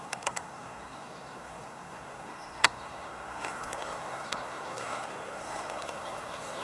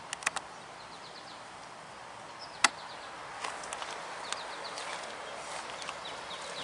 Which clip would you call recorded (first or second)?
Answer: second